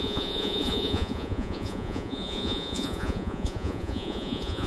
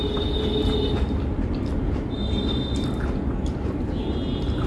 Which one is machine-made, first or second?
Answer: first